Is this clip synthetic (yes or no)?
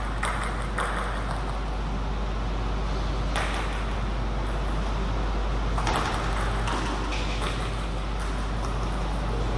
no